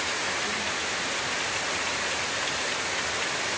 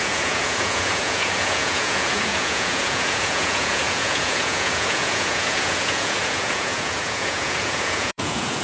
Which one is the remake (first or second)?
second